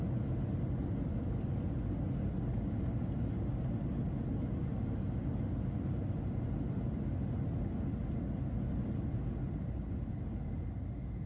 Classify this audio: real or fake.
real